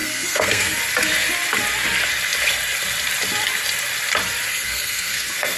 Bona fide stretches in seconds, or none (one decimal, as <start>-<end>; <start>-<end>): 0.8-4.5